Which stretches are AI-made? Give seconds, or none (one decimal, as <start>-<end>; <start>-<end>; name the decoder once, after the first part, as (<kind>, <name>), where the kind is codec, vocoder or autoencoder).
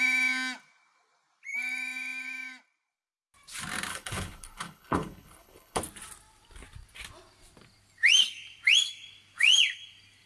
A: 3.9-5.8 (codec, HILCodec)